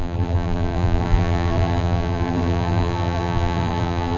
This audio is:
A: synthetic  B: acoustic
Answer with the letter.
A